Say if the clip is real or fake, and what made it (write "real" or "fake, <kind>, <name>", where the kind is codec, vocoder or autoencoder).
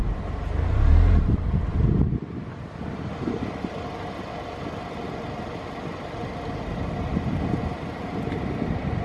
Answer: real